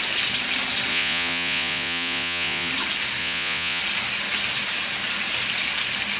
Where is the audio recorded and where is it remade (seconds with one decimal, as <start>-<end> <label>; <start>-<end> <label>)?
0.0-0.9 recorded; 0.9-2.7 remade; 2.7-3.2 recorded; 3.2-3.8 remade; 3.8-6.2 recorded